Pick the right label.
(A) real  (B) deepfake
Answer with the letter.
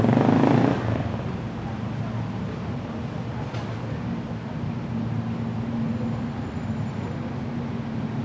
A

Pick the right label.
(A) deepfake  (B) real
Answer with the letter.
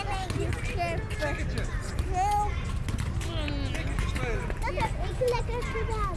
B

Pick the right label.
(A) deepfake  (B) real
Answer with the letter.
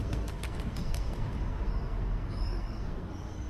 A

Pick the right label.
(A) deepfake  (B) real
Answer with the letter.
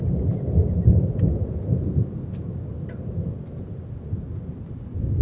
B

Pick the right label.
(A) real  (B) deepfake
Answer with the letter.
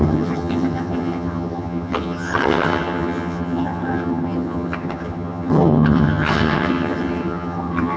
B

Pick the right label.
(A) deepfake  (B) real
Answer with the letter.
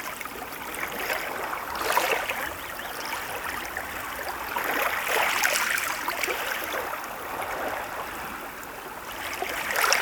B